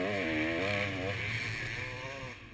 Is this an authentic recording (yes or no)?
yes